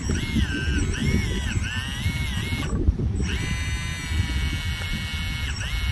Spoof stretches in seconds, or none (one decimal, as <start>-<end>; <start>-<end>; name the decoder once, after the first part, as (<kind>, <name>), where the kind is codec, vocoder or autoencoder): none